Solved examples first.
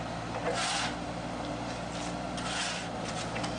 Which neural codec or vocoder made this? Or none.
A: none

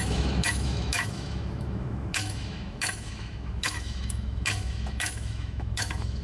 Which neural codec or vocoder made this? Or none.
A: autoencoder, DAC-VAE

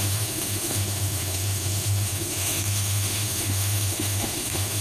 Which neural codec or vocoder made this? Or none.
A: autoencoder, DAC-VAE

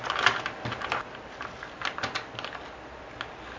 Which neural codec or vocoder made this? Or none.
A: none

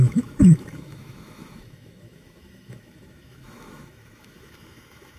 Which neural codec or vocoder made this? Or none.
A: autoencoder, DAC-VAE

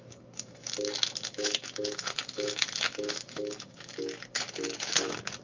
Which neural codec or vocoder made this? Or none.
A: autoencoder, DAC-VAE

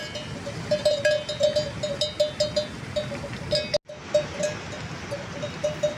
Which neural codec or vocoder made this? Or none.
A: none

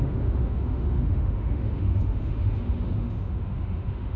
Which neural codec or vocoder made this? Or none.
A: autoencoder, DAC-VAE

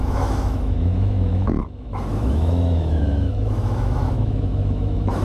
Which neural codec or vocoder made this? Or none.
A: autoencoder, DAC-VAE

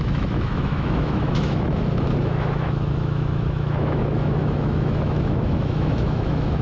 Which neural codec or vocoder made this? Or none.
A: autoencoder, DAC-VAE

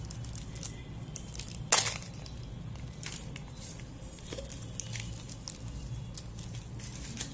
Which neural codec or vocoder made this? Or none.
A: none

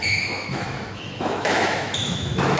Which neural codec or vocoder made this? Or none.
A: autoencoder, DAC-VAE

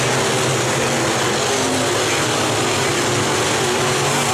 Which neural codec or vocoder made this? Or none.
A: none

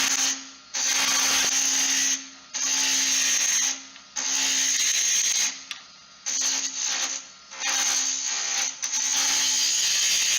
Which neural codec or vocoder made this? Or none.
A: none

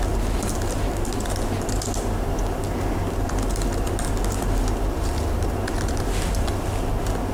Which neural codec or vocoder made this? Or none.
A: none